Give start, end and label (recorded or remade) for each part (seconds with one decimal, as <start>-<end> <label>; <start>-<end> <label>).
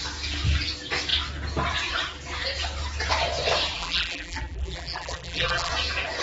0.0-3.8 recorded; 3.8-5.7 remade; 5.7-6.2 recorded